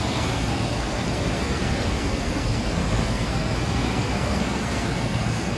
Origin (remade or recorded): remade